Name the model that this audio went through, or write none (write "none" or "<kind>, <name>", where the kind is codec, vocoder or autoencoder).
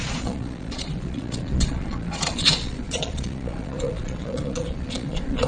vocoder, Vocos